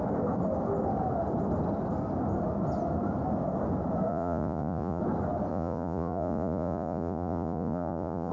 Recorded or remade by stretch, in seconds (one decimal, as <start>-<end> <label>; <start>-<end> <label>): 0.0-4.1 recorded; 4.1-5.0 remade; 5.0-5.5 recorded; 5.5-8.3 remade